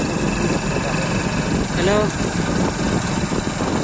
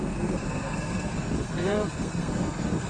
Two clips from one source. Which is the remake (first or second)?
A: second